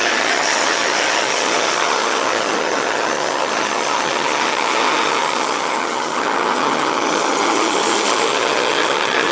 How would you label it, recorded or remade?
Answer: remade